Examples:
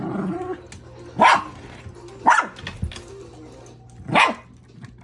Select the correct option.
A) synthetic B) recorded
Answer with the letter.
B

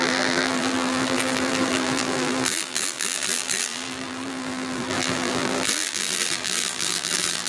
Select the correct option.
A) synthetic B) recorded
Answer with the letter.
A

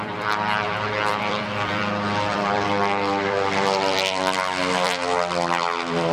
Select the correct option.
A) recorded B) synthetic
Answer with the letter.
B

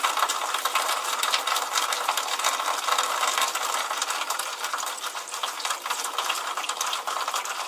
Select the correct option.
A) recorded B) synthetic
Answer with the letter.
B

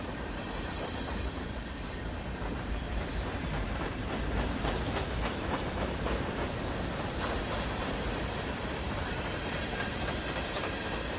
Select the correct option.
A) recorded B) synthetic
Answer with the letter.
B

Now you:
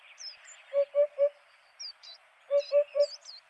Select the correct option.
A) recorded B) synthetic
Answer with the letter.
B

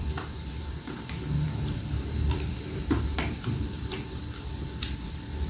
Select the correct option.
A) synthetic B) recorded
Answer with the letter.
A